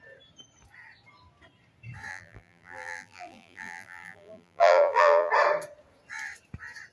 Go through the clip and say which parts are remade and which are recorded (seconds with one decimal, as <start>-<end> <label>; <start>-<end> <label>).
0.0-2.1 recorded; 2.1-5.3 remade; 5.3-6.9 recorded